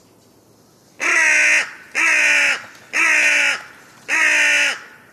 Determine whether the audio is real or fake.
real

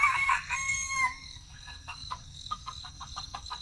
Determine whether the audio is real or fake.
fake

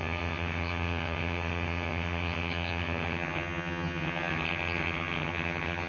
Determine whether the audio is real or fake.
fake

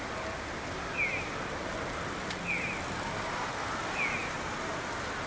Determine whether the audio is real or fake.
real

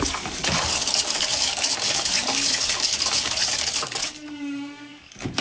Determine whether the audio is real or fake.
fake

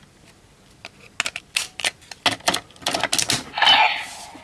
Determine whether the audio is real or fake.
real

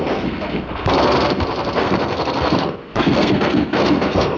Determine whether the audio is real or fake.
fake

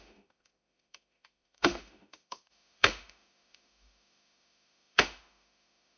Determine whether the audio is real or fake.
fake